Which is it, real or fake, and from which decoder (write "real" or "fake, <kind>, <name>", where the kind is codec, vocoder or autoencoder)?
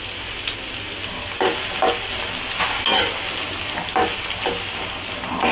real